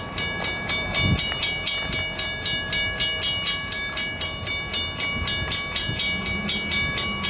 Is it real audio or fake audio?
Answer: real